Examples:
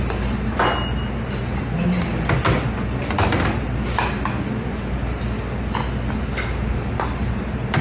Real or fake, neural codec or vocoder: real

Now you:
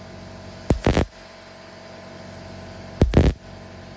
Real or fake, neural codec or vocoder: real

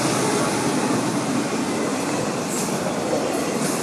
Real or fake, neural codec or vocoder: real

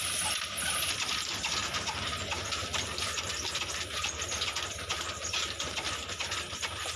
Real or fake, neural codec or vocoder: real